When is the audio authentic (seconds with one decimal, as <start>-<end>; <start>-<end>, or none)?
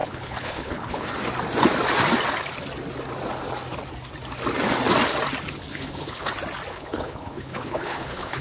1.1-5.7; 6.3-6.7